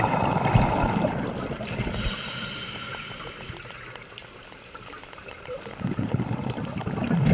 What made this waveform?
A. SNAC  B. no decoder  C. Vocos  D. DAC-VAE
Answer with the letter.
B